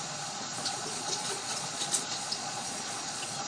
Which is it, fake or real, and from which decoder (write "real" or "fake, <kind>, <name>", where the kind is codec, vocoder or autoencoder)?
fake, vocoder, Vocos